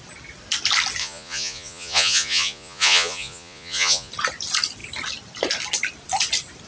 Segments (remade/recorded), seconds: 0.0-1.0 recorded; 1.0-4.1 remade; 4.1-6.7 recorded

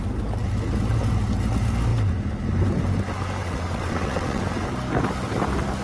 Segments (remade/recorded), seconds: 0.0-3.4 recorded; 3.4-4.4 remade; 4.4-5.8 recorded

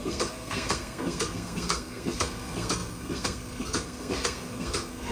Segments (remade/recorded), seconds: 0.0-5.1 remade